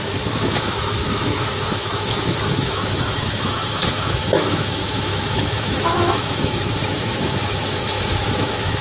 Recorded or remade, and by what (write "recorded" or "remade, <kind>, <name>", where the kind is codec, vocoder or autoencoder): remade, autoencoder, DAC-VAE